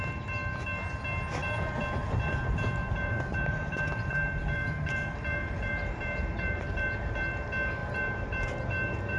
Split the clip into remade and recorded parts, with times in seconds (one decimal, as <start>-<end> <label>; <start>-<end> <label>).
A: 0.0-2.0 recorded; 2.0-7.2 remade; 7.2-7.8 recorded; 7.8-9.2 remade